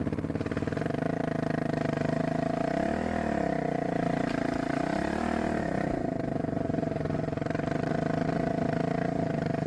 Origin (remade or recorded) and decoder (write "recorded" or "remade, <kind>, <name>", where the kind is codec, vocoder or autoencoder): recorded